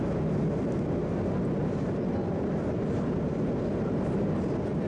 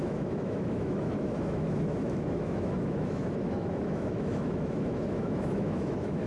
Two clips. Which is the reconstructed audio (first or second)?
second